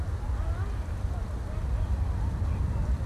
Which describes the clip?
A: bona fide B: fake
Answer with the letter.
A